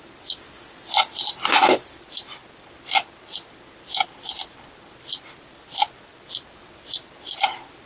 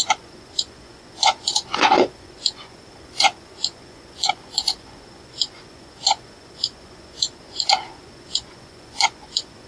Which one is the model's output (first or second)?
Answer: second